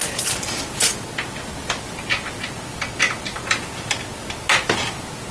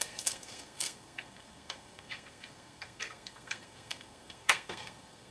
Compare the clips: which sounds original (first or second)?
first